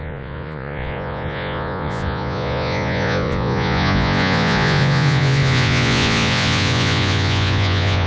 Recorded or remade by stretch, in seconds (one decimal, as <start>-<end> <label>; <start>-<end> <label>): 0.0-8.1 remade